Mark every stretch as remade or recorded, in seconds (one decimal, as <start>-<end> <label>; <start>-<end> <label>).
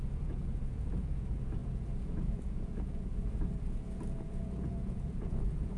0.0-5.8 remade